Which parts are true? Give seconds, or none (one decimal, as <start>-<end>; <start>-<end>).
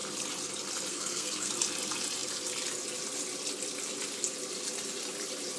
0.0-0.9; 1.5-5.6